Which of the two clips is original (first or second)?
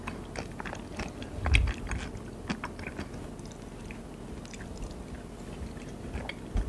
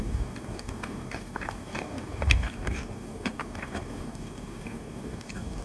first